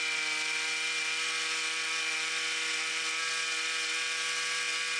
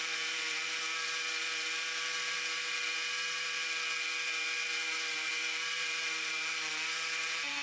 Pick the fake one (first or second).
second